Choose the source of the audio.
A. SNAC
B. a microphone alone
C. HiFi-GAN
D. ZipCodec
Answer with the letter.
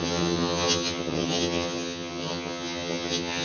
C